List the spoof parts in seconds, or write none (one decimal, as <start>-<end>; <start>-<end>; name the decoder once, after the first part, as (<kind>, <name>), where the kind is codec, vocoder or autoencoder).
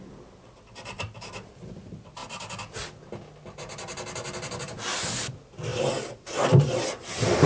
0.0-2.2 (vocoder, BigVGAN v2); 5.1-5.7; 6.6-7.5